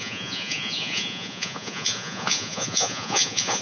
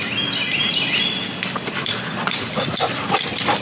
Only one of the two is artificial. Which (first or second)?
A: first